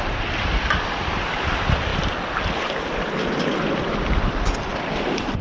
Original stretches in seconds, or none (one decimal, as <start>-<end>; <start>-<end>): 0.0-5.4